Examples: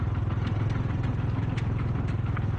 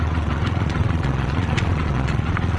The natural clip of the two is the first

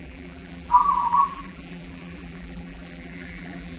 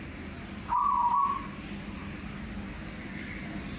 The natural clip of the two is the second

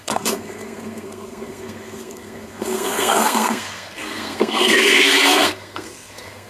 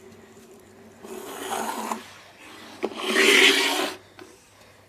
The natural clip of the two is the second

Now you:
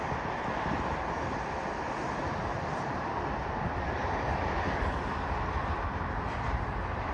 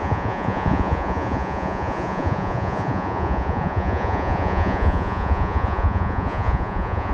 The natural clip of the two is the first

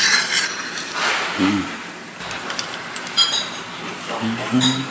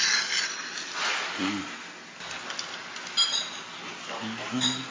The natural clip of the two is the second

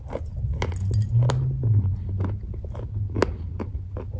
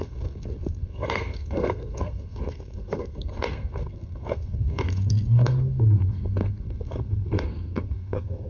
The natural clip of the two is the first